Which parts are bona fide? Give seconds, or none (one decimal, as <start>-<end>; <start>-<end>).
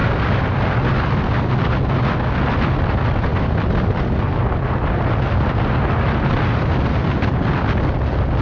0.6-3.3; 5.8-8.4